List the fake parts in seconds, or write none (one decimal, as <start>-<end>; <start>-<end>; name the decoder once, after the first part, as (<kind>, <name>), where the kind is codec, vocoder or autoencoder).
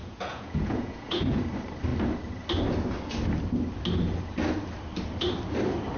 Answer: 0.0-1.4 (vocoder, Vocos)